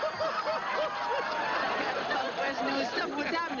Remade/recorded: recorded